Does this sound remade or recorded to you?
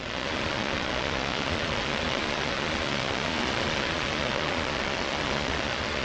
remade